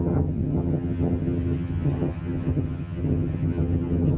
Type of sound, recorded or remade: remade